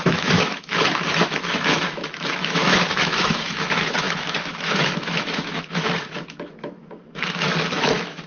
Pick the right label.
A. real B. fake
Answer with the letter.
B